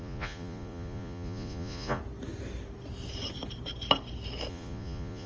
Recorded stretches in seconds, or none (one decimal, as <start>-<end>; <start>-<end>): 2.0-4.5